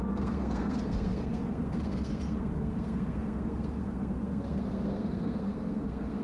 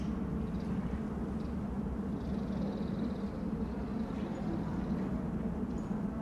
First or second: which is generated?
first